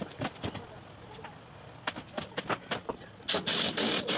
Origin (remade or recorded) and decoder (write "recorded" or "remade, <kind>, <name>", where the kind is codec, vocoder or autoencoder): recorded